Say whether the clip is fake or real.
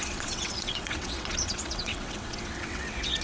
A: fake